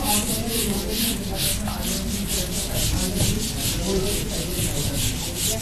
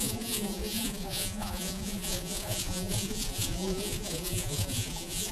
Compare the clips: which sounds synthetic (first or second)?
second